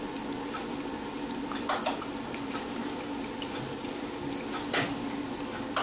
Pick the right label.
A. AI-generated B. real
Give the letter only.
B